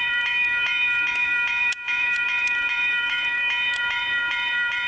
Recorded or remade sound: remade